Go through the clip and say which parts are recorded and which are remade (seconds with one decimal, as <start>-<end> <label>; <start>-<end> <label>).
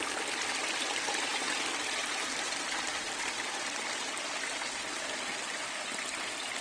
0.0-6.6 recorded